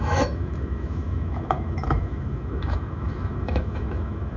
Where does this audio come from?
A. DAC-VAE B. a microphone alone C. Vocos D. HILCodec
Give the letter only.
A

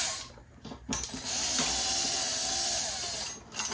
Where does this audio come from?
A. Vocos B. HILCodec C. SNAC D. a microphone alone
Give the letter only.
D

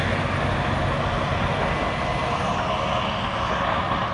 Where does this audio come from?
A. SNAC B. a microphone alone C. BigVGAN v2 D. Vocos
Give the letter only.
B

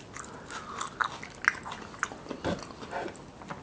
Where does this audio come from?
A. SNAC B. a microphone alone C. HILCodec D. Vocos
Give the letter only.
B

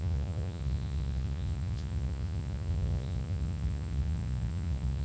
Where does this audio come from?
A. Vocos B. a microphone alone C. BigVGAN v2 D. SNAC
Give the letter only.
A